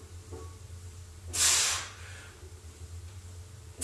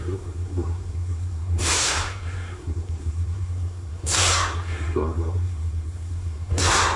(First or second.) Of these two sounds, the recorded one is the first